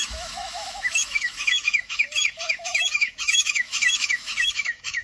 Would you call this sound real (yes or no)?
no